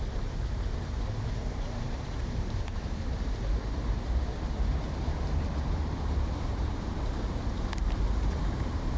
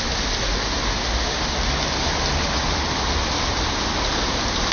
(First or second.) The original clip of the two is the second